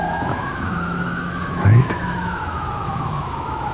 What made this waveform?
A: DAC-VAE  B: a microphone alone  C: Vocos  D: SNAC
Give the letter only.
A